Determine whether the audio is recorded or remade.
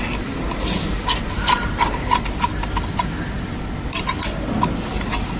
recorded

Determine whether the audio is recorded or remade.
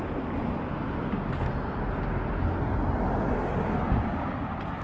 recorded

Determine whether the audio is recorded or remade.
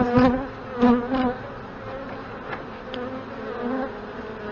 recorded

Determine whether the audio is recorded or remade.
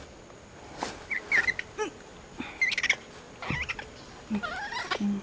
recorded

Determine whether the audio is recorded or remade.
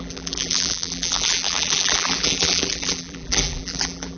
remade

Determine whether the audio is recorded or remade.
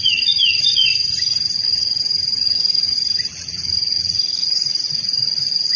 remade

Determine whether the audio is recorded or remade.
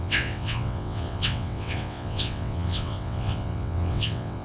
remade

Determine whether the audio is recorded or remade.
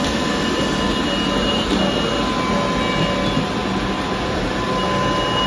recorded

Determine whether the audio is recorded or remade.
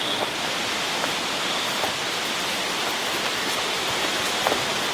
recorded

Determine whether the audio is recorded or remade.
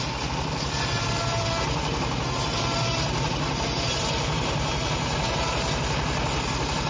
recorded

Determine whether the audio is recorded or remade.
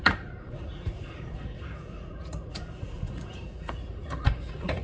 remade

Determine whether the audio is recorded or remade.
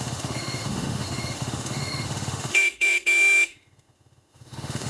remade